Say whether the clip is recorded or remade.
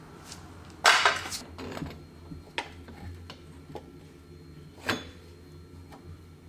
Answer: recorded